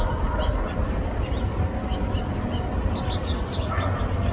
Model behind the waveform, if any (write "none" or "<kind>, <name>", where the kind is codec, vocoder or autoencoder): none